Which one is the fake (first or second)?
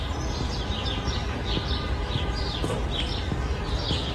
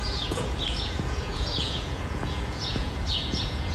second